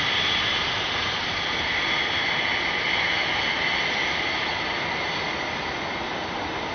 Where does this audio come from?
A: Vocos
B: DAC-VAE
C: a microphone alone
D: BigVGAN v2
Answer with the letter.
C